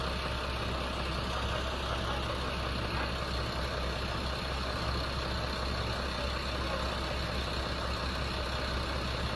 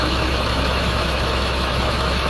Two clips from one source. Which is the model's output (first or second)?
second